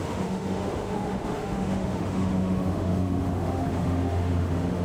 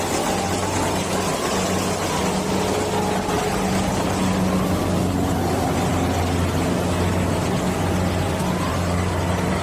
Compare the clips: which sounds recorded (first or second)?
second